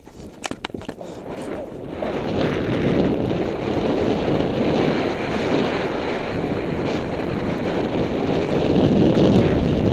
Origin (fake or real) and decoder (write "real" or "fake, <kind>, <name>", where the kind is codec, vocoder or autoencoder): real